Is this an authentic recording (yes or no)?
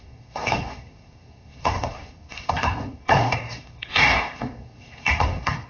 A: no